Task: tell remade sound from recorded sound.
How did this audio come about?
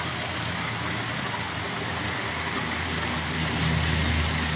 recorded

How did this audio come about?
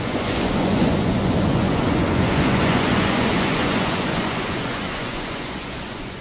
remade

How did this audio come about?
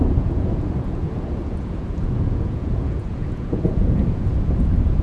remade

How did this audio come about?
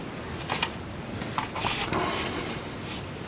recorded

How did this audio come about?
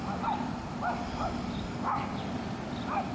recorded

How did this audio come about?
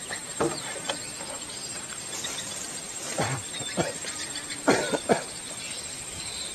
remade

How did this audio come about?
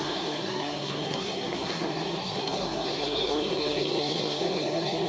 remade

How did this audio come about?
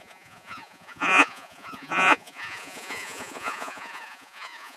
remade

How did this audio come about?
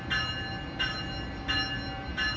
recorded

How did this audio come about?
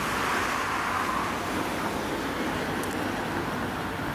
recorded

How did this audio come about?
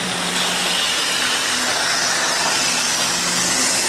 recorded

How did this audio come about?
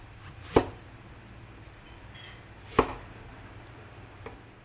recorded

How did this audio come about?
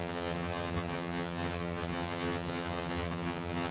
remade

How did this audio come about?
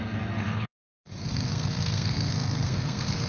remade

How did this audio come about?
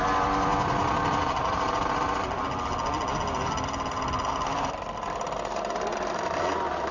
recorded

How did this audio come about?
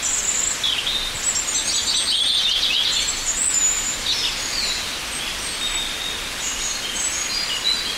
recorded